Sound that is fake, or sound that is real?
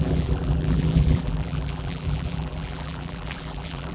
fake